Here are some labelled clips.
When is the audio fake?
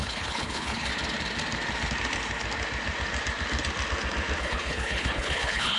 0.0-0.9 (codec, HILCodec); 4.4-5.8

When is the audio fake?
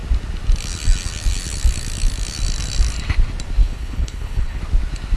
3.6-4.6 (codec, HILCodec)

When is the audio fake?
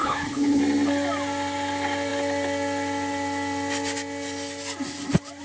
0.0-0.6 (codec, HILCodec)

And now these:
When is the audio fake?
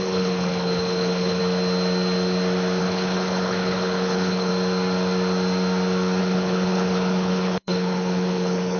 0.0-1.4 (codec, HILCodec); 2.8-4.5; 6.2-8.8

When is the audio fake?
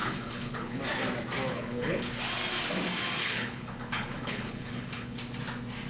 0.0-0.8 (codec, HILCodec); 1.5-2.1; 3.2-5.2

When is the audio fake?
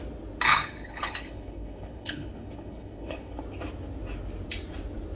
0.5-3.4 (codec, HILCodec)